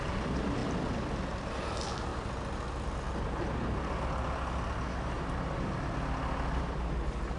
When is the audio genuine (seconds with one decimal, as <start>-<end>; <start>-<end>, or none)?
0.0-7.4